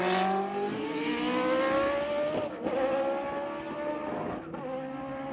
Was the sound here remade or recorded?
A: recorded